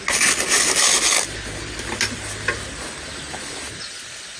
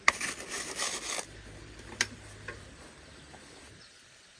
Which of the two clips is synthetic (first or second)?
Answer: second